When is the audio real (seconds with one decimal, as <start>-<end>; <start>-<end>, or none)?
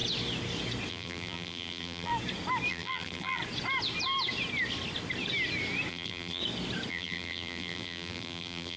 0.0-0.9; 2.1-2.7; 3.4-5.9; 6.4-6.9